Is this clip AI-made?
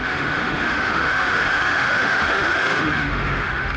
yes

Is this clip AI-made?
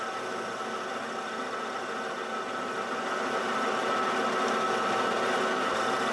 no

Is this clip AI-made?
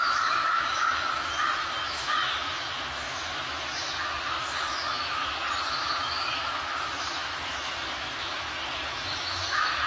yes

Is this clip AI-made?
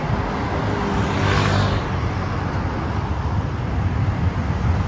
no